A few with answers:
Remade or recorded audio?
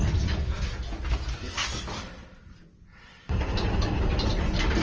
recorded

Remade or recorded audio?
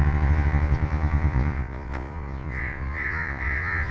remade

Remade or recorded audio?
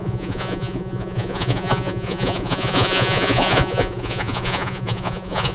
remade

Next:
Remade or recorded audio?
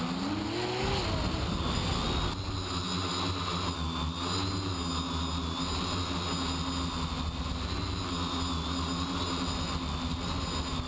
recorded